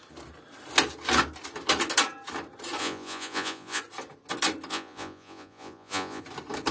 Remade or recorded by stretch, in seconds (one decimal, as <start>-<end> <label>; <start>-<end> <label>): 0.0-2.8 recorded; 2.8-3.8 remade; 3.8-4.7 recorded; 4.7-6.2 remade; 6.2-6.7 recorded